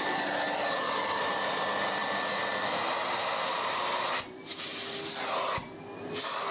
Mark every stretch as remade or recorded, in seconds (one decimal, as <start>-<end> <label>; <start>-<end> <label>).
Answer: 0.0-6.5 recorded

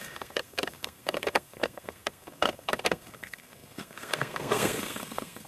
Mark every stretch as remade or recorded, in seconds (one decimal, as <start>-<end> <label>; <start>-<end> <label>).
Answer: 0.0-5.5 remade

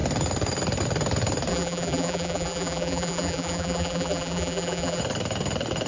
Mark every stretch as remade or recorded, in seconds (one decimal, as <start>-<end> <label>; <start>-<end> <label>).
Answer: 0.0-1.5 recorded; 1.5-5.0 remade; 5.0-5.9 recorded

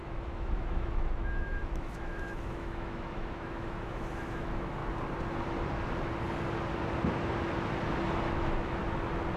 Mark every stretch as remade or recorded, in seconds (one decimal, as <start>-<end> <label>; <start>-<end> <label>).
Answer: 0.0-4.8 remade; 4.8-8.3 recorded; 8.3-8.8 remade; 8.8-9.4 recorded